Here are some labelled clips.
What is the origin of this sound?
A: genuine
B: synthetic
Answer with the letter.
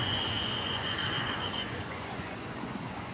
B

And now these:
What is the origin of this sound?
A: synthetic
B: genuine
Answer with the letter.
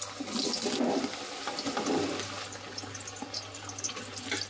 B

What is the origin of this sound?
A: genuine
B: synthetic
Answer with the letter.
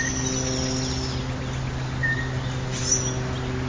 A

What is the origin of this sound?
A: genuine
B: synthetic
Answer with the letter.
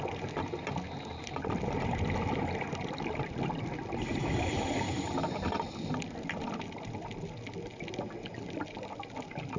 A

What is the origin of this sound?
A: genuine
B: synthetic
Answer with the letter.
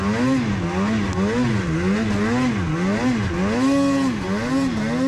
A